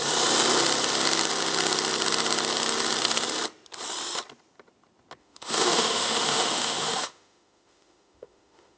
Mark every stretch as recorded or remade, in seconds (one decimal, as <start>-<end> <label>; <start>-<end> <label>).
0.0-5.2 recorded; 5.2-8.8 remade